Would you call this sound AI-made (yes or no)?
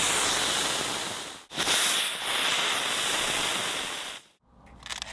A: no